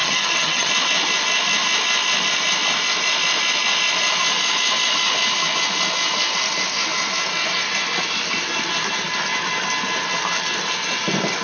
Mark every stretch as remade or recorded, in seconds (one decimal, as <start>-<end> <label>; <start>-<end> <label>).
0.0-0.7 remade; 0.7-11.4 recorded